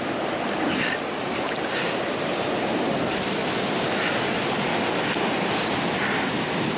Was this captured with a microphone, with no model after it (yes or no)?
yes